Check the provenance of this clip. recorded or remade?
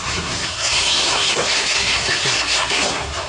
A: remade